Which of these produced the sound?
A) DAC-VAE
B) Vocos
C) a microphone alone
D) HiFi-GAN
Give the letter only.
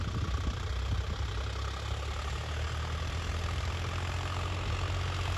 C